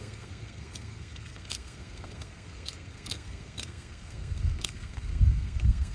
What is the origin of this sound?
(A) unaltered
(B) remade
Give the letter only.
B